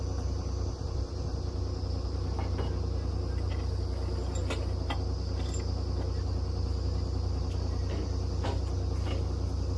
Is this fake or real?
real